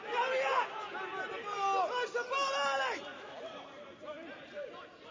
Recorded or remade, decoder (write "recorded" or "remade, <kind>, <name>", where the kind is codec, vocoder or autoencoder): recorded